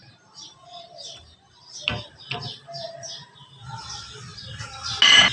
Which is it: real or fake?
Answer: real